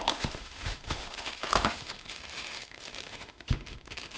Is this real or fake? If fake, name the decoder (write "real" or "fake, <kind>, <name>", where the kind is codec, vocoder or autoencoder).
fake, autoencoder, DAC-VAE